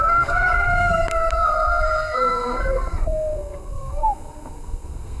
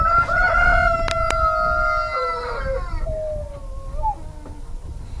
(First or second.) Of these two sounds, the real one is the second